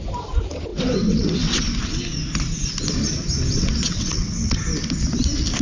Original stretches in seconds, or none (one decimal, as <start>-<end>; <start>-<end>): 0.0-0.7; 1.6-3.5; 4.6-5.6

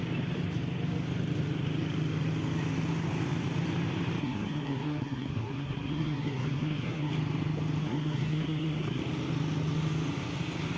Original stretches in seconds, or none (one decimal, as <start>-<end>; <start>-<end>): 0.0-4.2; 7.1-7.8; 9.0-10.8

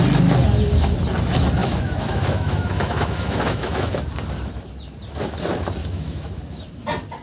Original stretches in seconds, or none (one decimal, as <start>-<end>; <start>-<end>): 0.0-1.6; 3.9-5.8; 6.4-7.2

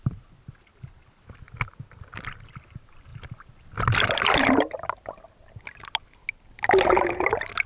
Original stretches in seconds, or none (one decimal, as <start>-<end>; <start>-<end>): 0.0-7.7

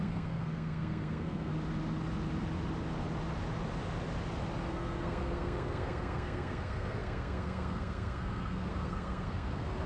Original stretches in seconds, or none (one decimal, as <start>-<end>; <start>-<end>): 1.5-4.7

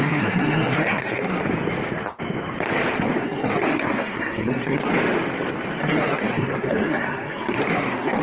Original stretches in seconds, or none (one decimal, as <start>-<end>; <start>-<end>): 1.4-3.2; 4.9-5.8